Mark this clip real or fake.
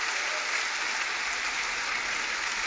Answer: real